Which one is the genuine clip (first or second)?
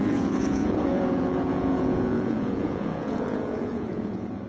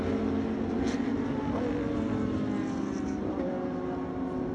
second